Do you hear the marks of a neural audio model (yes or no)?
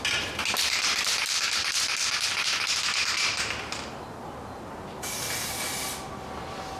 no